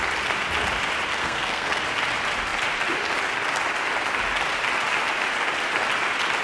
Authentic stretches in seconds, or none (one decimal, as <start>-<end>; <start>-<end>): 0.0-1.2; 1.8-6.4